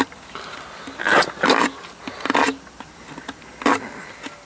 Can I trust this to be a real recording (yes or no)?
yes